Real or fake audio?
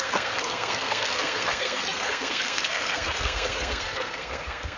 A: fake